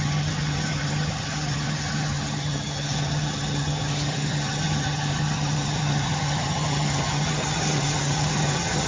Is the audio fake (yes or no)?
yes